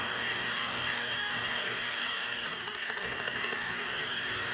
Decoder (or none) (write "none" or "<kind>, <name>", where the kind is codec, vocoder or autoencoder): codec, DAC